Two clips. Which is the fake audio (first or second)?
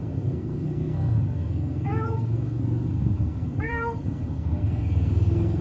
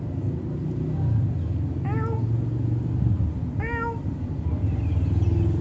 first